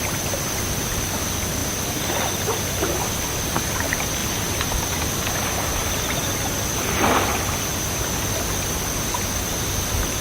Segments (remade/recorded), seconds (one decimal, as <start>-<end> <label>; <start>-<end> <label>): 0.0-10.2 recorded